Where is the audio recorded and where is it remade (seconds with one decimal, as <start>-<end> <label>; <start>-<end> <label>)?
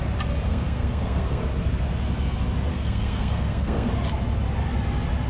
0.0-0.5 recorded; 0.5-1.4 remade; 1.4-2.7 recorded; 2.7-3.9 remade; 3.9-5.3 recorded